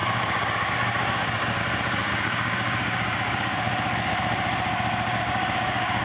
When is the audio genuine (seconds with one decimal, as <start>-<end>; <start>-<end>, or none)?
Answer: 1.6-2.0; 3.7-5.1